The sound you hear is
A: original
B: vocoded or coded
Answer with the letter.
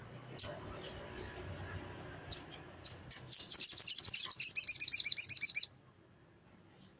A